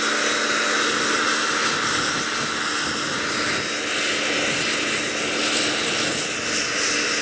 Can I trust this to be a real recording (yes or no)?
yes